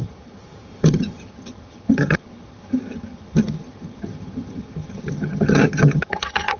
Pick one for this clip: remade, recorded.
remade